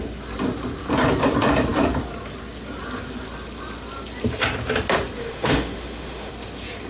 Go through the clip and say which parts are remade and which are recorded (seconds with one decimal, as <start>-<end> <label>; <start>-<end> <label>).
0.0-5.2 recorded; 5.2-6.3 remade; 6.3-6.9 recorded